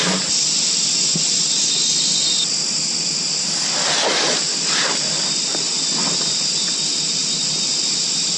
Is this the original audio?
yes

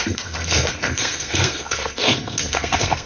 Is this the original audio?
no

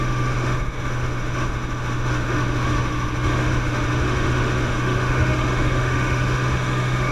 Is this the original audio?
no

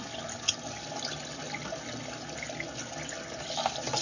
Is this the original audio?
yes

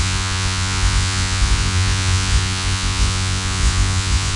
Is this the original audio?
no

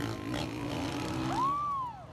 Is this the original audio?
yes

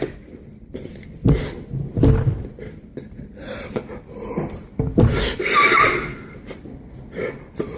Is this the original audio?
no